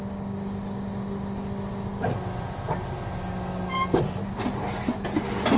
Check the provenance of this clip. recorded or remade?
recorded